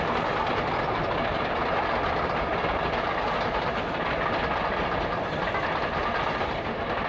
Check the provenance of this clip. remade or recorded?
recorded